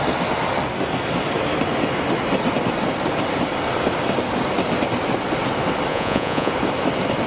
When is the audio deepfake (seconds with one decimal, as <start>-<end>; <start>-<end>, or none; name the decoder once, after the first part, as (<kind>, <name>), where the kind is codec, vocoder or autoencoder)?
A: 5.9-6.5 (vocoder, Vocos)